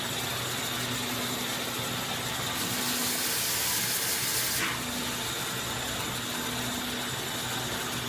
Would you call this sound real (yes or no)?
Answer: yes